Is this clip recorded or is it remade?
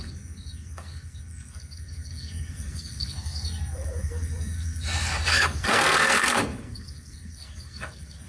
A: remade